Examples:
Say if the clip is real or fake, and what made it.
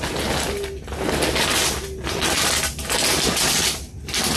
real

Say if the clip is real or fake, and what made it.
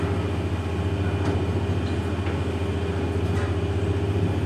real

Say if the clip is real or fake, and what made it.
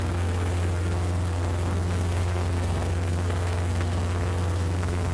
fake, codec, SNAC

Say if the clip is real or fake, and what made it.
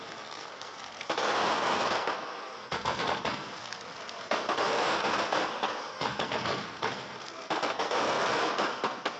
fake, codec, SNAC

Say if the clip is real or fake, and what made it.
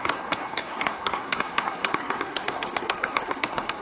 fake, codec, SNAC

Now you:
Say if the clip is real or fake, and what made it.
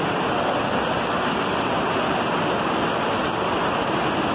real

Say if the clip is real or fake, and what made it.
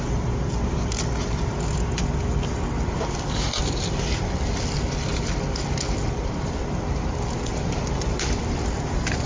real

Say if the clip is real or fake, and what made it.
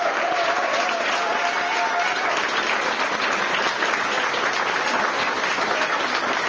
real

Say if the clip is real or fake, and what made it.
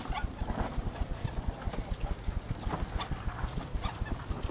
real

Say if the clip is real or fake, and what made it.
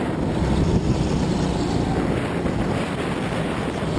real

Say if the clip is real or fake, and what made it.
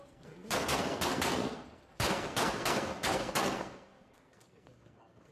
fake, codec, SNAC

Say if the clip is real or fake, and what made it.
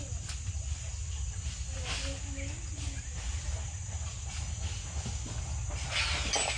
real